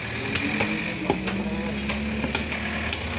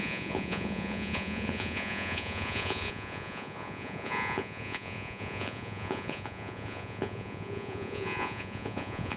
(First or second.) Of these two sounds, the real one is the first